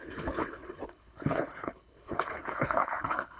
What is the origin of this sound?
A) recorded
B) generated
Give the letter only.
B